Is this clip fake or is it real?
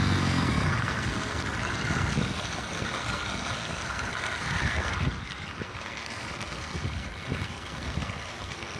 fake